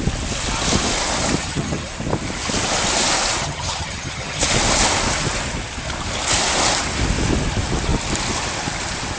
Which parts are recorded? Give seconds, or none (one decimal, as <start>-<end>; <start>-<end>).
0.0-1.4; 1.9-3.4; 4.4-9.2